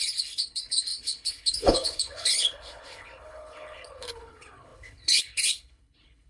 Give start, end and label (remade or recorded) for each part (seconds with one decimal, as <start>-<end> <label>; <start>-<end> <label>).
0.0-6.3 remade